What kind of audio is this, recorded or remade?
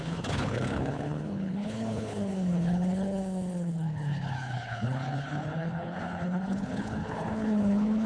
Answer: remade